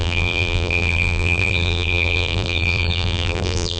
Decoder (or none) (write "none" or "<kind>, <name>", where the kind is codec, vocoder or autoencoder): vocoder, BigVGAN v2